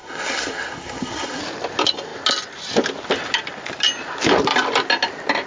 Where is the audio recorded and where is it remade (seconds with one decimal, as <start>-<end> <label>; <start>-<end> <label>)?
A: 0.0-1.4 remade; 1.4-5.5 recorded